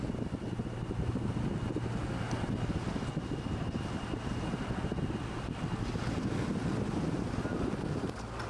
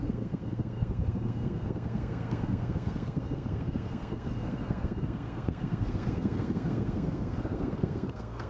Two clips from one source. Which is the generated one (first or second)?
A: second